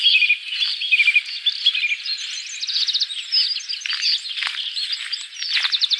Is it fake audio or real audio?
real